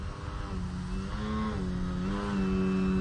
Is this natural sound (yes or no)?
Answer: yes